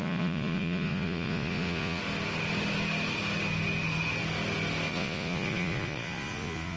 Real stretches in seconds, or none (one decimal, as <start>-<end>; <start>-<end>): 2.0-4.9